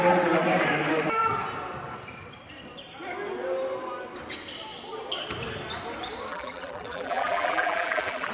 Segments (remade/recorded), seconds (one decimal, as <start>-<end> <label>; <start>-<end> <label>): 0.0-6.3 recorded; 6.3-8.3 remade